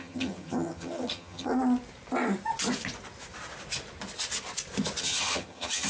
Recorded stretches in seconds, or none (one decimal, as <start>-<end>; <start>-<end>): 1.5-5.0